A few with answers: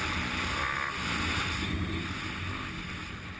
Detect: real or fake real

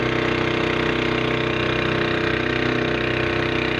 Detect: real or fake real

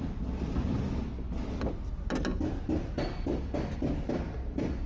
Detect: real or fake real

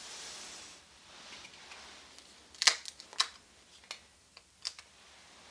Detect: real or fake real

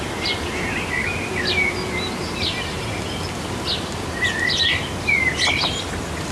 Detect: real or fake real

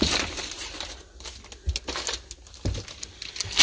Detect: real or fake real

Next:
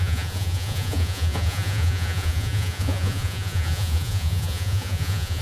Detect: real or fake fake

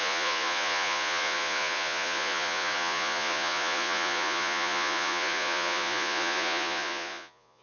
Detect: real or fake fake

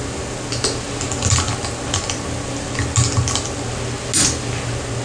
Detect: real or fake real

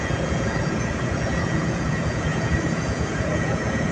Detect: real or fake fake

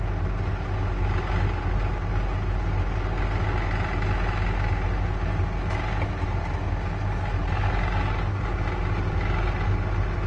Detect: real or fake real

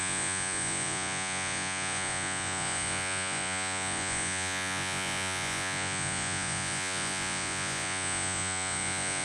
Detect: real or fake fake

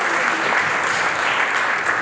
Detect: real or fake real